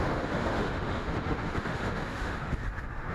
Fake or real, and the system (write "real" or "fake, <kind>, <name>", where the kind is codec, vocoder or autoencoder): fake, autoencoder, DAC-VAE